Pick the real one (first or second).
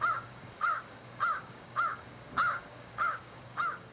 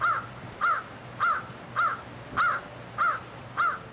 second